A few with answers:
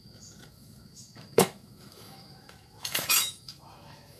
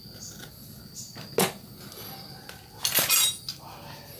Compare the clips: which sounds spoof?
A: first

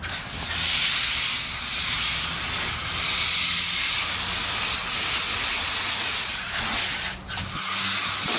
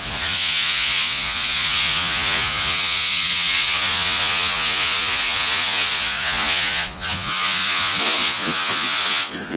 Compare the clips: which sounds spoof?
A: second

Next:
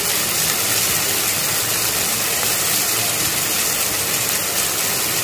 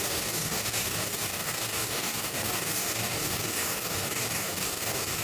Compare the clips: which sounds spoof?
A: second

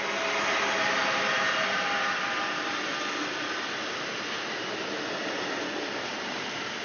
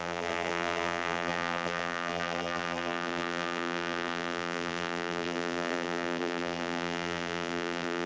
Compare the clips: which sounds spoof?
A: second